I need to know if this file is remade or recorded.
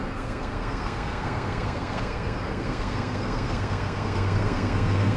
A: remade